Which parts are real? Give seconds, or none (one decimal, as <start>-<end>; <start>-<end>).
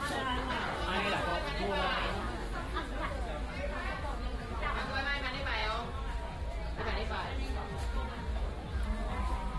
1.3-3.8; 5.6-9.1